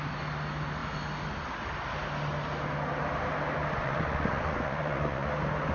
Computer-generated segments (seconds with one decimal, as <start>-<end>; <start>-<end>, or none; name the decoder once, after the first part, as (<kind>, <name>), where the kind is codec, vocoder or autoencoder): 3.7-5.3 (vocoder, Vocos)